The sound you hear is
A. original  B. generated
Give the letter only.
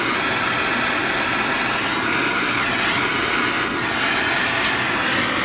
A